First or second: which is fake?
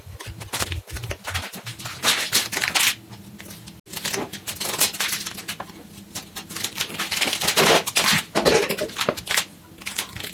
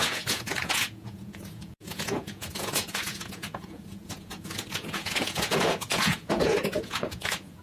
second